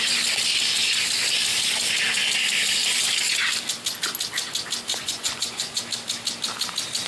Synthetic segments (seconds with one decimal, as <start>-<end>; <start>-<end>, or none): 4.9-5.8